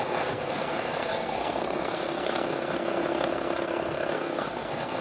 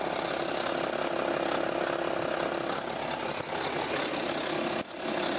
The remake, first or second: first